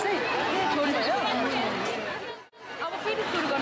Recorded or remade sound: recorded